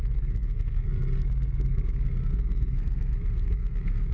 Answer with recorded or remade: remade